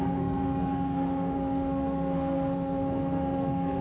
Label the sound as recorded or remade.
remade